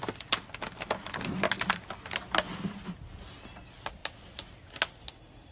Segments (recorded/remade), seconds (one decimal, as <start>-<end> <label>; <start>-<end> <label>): 0.0-5.5 recorded